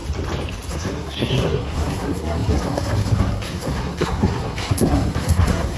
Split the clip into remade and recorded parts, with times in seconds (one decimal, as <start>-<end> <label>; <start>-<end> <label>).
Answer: 0.0-0.7 recorded; 0.7-5.8 remade